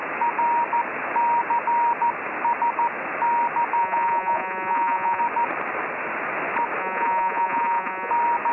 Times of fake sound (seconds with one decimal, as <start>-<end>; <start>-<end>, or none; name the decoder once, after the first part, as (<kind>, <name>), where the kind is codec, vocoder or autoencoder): 3.8-5.2 (vocoder, Vocos); 6.8-8.1